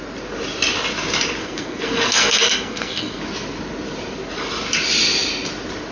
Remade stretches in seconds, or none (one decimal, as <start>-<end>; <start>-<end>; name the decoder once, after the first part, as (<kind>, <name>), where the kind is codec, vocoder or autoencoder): 1.4-3.2 (codec, SNAC)